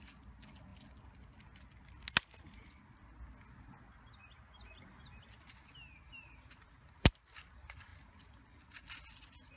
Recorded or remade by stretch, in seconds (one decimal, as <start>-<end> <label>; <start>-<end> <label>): 0.0-9.6 recorded